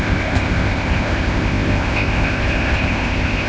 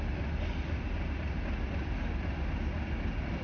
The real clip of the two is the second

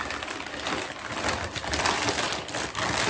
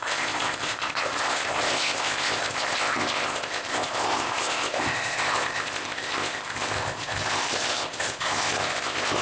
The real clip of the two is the first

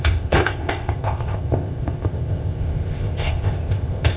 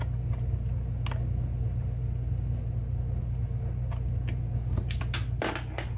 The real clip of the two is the second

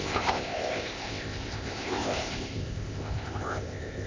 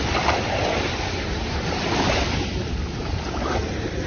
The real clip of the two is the second